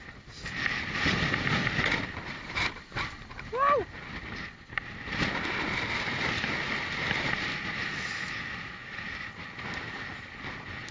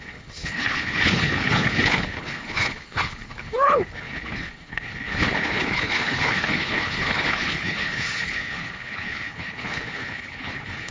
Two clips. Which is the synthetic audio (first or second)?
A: second